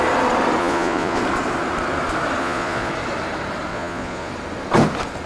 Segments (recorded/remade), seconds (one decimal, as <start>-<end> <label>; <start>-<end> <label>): 0.0-0.6 recorded; 0.6-1.2 remade; 1.2-2.4 recorded; 2.4-2.9 remade; 2.9-3.7 recorded; 3.7-4.3 remade; 4.3-5.3 recorded